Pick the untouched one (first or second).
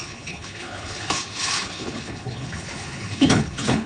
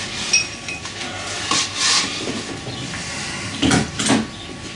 second